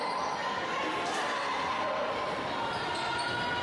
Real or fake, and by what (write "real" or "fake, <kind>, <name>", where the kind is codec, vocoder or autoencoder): real